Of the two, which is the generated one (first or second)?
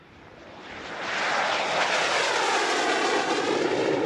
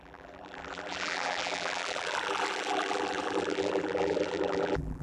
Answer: second